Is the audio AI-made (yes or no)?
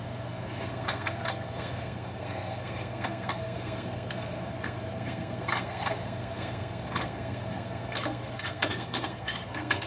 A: yes